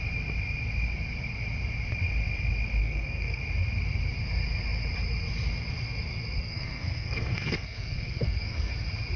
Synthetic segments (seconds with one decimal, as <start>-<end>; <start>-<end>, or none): 2.8-3.4; 6.4-8.7

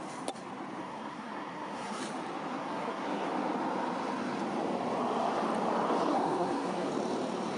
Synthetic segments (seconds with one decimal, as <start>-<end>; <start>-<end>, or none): 0.8-2.0; 2.5-3.3; 6.1-6.9

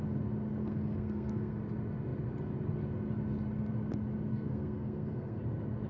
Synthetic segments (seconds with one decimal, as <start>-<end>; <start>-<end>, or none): 0.6-1.6; 4.3-5.4

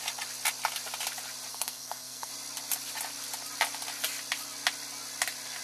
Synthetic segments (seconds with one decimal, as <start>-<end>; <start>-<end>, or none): 1.5-2.3

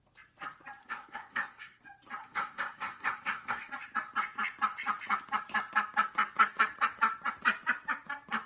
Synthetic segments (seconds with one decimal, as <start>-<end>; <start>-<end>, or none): 0.8-1.8; 2.2-3.7